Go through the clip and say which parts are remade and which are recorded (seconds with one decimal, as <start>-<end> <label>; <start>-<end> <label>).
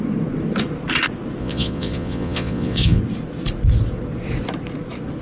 0.0-1.4 recorded; 1.4-3.0 remade; 3.0-5.2 recorded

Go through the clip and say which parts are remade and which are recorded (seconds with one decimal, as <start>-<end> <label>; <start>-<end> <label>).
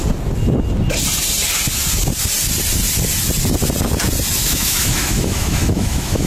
0.0-4.4 recorded; 4.4-6.3 remade